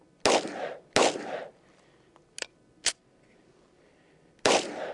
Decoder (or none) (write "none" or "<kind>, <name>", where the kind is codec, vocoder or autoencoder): none